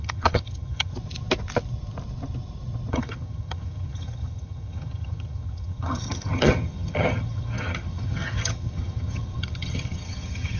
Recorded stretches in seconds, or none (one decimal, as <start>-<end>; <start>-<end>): 0.9-2.9